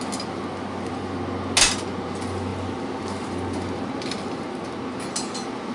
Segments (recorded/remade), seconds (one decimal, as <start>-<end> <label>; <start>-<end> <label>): 0.0-5.7 recorded